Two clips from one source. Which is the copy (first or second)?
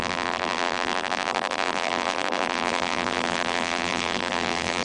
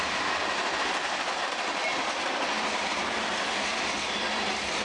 first